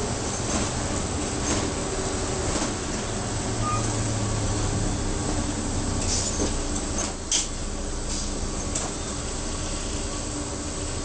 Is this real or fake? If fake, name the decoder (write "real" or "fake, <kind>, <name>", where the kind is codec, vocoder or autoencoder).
real